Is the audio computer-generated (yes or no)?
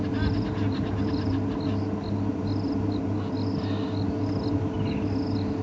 no